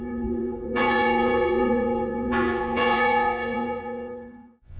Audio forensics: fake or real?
fake